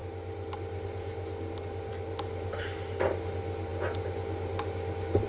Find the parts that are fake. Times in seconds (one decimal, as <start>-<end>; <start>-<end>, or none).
none